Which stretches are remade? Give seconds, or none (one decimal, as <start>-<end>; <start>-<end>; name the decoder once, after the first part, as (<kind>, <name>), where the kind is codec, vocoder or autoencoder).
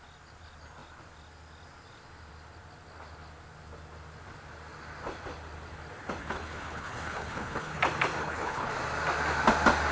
6.2-7.8 (codec, HILCodec); 8.2-8.7